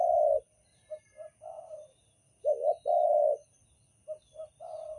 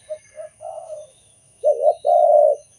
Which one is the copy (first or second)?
second